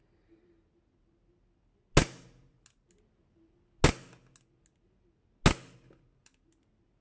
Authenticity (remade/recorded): recorded